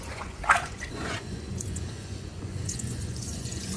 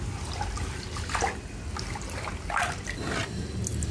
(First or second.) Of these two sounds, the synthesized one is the first